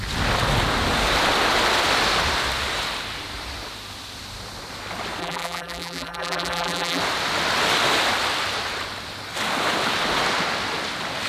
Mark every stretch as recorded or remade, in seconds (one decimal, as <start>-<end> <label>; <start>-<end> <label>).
0.0-5.2 recorded; 5.2-7.0 remade; 7.0-11.3 recorded